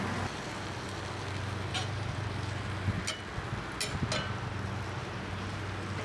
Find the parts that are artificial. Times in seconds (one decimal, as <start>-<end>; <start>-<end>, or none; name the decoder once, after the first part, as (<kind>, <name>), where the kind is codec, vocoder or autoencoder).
1.7-2.3 (vocoder, BigVGAN v2); 5.0-5.6